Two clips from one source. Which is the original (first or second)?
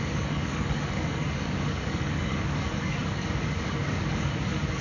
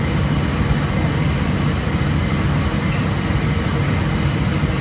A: second